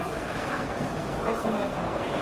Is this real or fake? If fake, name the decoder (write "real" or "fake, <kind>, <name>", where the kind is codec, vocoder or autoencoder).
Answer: fake, codec, SNAC